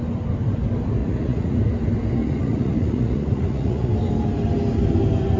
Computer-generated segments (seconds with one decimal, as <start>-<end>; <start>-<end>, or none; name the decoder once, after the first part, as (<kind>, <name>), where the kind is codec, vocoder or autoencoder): 1.0-1.6 (vocoder, Vocos); 2.2-3.9